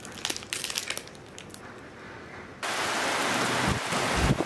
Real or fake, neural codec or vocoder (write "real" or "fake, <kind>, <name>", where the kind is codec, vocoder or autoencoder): real